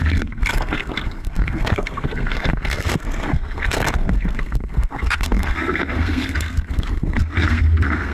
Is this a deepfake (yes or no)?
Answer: yes